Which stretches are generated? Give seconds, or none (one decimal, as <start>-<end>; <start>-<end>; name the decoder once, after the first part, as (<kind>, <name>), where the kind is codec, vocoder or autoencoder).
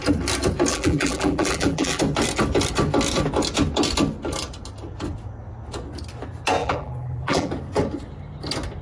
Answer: 0.7-2.0 (vocoder, BigVGAN v2); 6.6-7.5